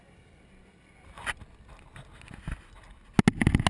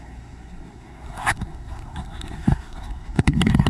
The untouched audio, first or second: first